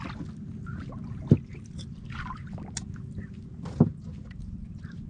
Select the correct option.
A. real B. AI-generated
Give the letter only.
A